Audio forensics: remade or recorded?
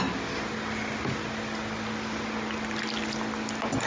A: recorded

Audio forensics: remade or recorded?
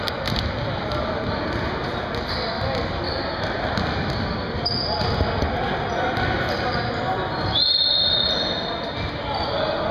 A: recorded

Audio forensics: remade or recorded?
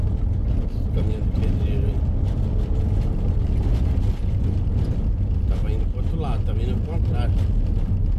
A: recorded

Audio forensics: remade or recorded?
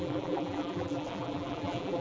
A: remade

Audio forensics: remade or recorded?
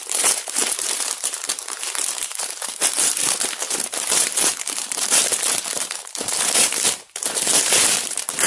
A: remade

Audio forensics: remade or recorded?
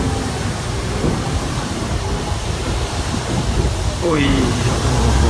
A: remade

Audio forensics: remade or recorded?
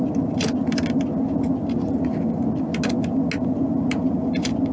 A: recorded